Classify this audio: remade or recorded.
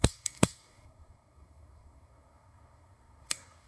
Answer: remade